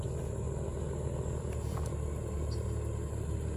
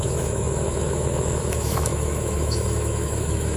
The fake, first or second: second